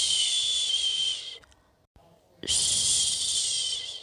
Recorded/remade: remade